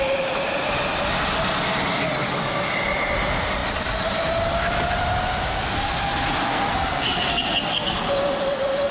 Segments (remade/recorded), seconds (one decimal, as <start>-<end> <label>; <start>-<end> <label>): 0.0-6.5 recorded; 6.5-8.0 remade; 8.0-8.9 recorded